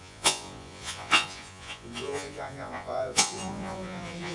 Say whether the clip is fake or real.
fake